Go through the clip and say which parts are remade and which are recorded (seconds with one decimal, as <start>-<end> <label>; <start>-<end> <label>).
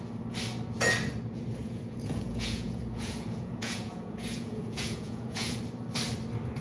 0.0-1.6 recorded; 1.6-5.6 remade; 5.6-6.6 recorded